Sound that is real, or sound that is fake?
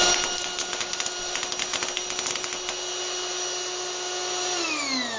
real